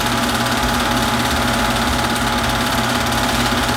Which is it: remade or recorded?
recorded